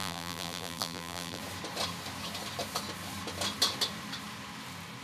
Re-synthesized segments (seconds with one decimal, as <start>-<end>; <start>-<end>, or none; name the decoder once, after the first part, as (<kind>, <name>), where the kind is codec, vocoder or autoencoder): 0.0-1.4 (vocoder, BigVGAN v2)